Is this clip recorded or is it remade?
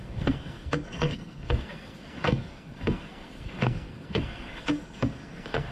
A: remade